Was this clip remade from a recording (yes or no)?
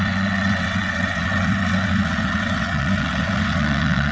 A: yes